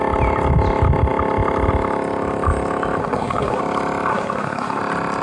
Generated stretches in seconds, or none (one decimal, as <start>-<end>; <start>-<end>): 3.0-3.6; 4.1-4.8